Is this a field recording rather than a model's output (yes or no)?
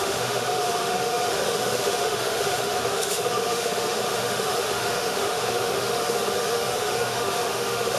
no